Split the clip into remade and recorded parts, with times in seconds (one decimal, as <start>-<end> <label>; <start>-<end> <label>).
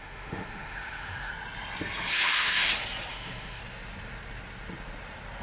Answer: 0.0-1.3 remade; 1.3-2.1 recorded; 2.1-2.7 remade; 2.7-3.1 recorded; 3.1-3.6 remade; 3.6-5.4 recorded